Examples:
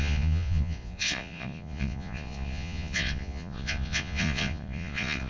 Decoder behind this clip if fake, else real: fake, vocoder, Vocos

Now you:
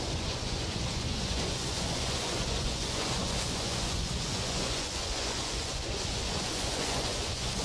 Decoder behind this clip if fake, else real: fake, vocoder, Vocos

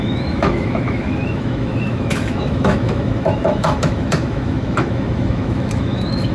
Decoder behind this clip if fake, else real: fake, autoencoder, DAC-VAE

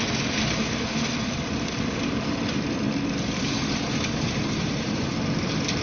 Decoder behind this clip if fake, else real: real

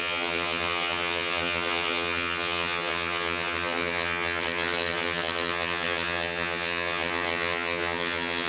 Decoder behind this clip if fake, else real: fake, vocoder, HiFi-GAN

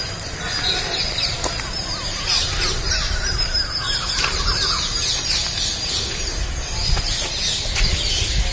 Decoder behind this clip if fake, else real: real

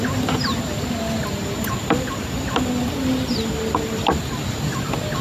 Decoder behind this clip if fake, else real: real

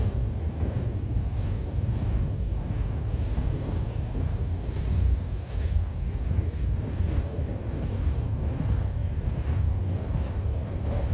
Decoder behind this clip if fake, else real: fake, codec, DAC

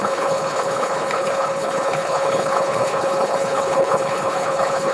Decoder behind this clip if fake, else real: fake, codec, HILCodec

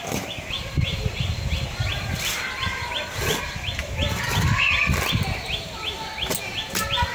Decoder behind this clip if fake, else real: real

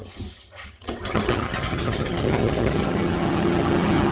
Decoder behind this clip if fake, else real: fake, vocoder, HiFi-GAN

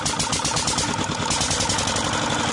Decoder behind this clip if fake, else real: real